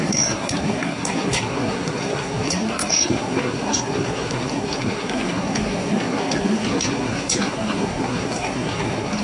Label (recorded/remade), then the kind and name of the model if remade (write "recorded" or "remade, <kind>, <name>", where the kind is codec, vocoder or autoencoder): remade, codec, SNAC